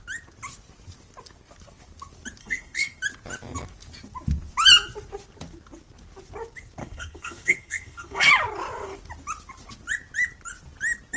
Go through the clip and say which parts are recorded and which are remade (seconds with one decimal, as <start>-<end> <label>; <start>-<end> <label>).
0.0-2.4 recorded; 2.4-3.0 remade; 3.0-6.8 recorded; 6.8-8.3 remade; 8.3-11.2 recorded